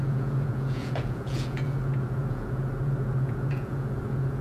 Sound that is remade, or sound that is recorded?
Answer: remade